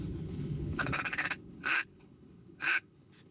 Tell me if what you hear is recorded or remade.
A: remade